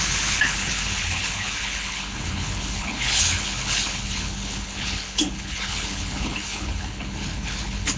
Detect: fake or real fake